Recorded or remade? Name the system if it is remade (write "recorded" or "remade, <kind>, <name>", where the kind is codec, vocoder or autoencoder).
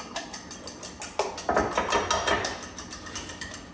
recorded